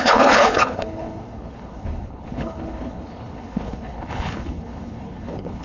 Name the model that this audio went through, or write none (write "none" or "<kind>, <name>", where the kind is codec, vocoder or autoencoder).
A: codec, HILCodec